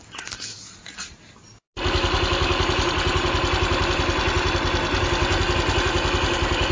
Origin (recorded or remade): recorded